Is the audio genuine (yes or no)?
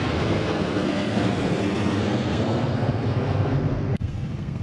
no